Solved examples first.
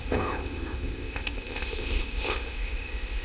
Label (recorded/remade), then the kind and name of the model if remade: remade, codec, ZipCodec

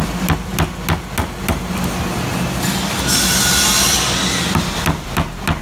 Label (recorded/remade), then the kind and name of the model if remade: recorded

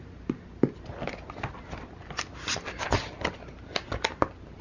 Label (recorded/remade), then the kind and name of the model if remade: recorded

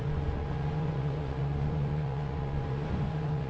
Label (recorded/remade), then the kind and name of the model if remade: remade, vocoder, Vocos